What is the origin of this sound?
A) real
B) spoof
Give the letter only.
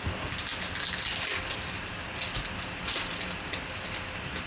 A